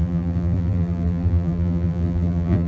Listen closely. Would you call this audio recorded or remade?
remade